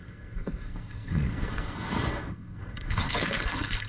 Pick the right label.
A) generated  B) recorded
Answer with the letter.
A